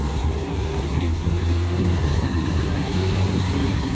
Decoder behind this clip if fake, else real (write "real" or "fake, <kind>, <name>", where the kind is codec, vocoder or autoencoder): fake, codec, SNAC